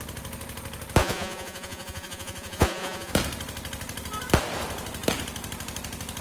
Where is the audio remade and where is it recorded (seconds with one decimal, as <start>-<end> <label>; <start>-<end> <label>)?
0.0-1.0 recorded; 1.0-3.1 remade; 3.1-6.2 recorded